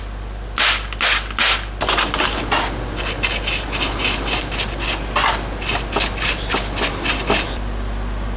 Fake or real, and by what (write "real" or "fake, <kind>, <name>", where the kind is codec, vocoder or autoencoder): real